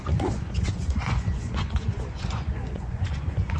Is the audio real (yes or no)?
no